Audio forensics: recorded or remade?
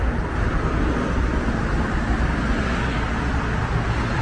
recorded